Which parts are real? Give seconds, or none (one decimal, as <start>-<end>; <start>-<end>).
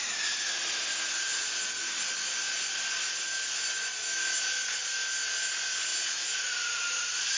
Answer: 0.0-7.4